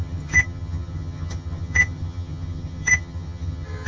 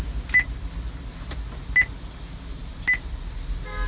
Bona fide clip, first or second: second